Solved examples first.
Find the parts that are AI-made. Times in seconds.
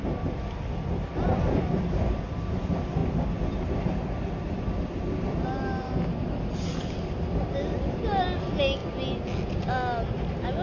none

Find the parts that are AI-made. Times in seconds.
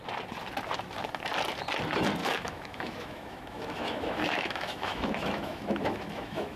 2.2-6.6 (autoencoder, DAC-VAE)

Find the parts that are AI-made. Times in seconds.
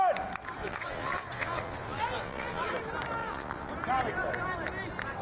0.6-2.7 (vocoder, Vocos); 3.2-3.7